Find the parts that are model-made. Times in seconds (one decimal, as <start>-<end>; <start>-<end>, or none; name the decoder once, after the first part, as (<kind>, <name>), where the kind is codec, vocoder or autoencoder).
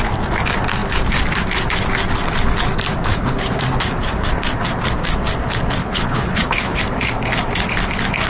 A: 3.1-3.6 (codec, HILCodec); 5.8-6.8